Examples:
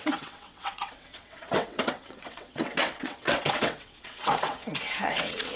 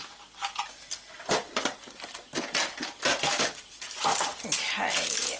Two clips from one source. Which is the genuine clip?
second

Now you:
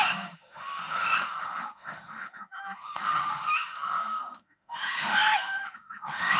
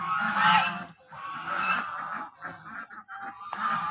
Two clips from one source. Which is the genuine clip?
second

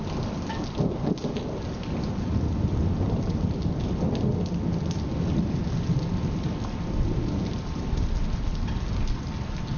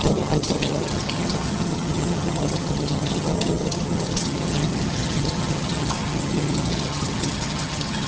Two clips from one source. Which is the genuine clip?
first